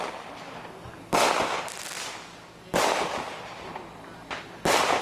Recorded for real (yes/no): yes